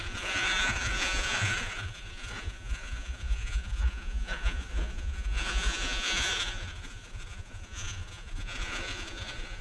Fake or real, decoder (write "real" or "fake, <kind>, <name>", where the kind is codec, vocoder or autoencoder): fake, vocoder, Vocos